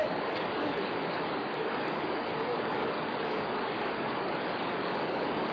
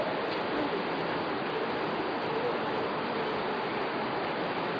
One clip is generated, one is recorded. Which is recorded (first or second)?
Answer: second